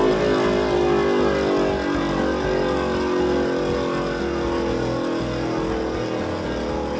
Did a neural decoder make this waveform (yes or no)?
no